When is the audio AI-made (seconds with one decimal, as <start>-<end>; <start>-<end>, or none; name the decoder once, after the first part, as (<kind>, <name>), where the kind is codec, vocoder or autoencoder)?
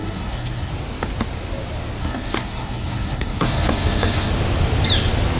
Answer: 0.0-0.7 (codec, SNAC); 2.0-4.3